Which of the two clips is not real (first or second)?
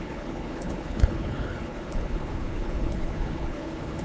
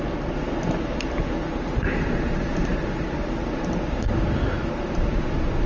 first